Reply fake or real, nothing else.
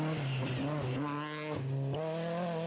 real